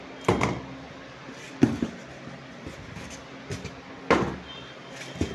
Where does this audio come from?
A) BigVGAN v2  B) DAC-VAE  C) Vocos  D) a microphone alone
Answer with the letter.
D